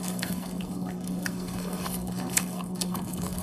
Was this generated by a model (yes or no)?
yes